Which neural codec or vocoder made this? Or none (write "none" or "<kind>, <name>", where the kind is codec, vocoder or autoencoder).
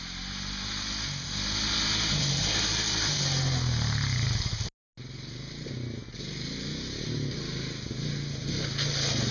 none